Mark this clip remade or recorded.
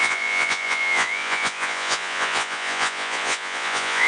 remade